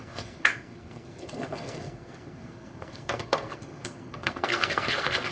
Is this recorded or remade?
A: remade